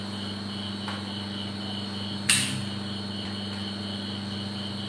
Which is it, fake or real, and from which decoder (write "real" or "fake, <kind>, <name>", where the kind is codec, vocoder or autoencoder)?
fake, vocoder, BigVGAN v2